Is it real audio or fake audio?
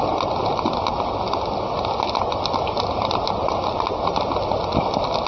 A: real